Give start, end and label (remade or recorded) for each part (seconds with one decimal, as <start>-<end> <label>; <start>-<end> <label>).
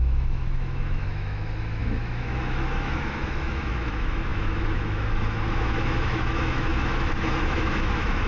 0.0-8.3 remade